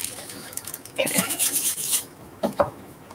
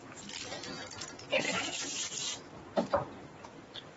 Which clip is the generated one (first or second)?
first